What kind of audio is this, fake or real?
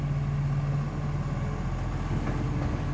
real